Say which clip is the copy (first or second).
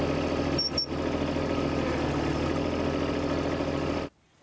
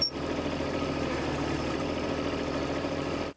second